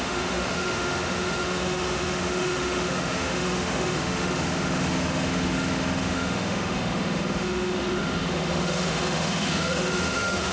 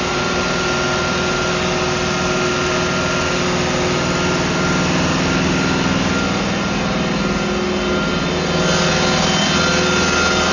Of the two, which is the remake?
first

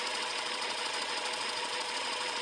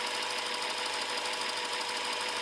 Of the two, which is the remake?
first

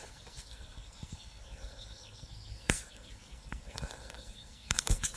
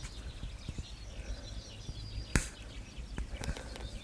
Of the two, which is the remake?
first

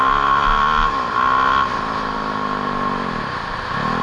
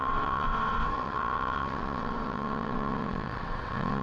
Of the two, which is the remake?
second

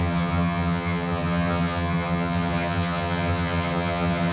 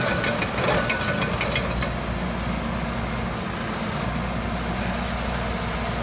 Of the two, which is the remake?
first